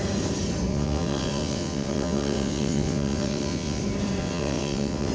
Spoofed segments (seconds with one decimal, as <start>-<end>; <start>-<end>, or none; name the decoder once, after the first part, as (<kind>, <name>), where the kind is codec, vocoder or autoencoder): 0.7-3.8 (vocoder, WaveNeXt); 4.2-5.1